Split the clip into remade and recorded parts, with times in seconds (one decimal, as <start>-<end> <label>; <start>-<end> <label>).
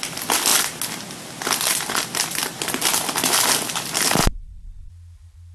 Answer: 0.0-4.2 recorded; 4.2-4.9 remade; 4.9-5.5 recorded